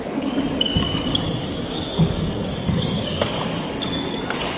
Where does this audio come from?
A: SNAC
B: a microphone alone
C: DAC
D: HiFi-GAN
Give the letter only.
C